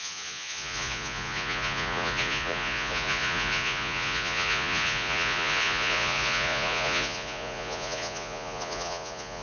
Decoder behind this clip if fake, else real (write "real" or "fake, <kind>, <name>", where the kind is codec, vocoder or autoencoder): fake, vocoder, Vocos